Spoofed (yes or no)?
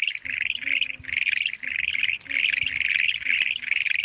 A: no